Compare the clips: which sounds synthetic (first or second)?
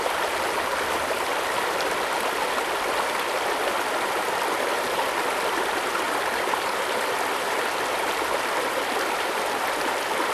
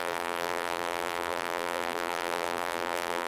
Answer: second